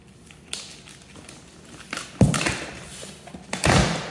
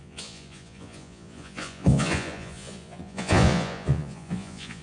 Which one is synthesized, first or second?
second